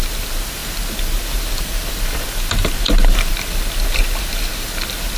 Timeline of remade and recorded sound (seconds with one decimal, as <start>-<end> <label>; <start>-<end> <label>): 0.0-5.2 recorded